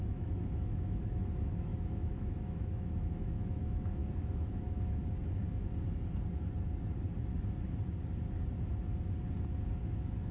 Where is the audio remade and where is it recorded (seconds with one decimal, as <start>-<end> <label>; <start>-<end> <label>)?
0.0-5.0 remade; 5.0-9.8 recorded; 9.8-10.3 remade